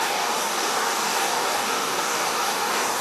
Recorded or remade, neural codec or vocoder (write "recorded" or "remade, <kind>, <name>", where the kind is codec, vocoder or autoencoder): remade, codec, DAC